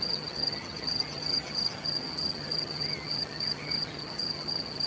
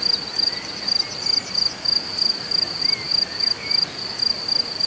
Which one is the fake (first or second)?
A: first